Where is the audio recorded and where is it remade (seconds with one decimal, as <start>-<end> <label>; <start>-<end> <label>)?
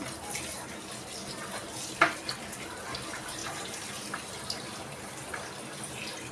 0.0-6.3 recorded